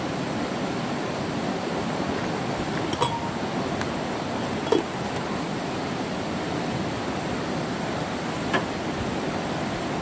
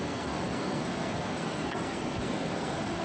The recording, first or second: first